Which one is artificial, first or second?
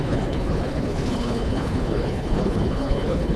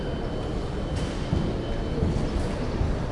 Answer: first